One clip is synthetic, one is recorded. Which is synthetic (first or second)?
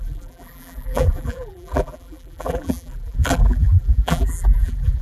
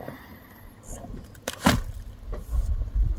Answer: first